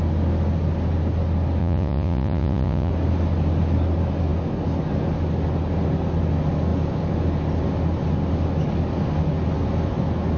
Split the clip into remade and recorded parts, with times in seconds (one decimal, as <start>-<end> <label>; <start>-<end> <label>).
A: 0.0-1.6 recorded; 1.6-2.9 remade; 2.9-10.4 recorded